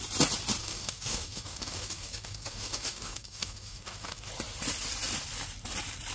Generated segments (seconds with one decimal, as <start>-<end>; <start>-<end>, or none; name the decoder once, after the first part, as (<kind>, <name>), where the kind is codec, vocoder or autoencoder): 0.6-4.3 (codec, DAC)